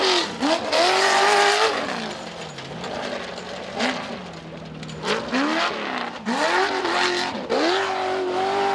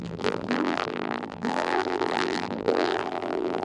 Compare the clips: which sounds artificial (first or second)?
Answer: second